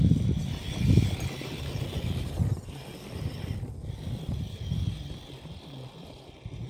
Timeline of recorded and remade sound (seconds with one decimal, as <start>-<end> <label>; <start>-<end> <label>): 0.0-6.7 recorded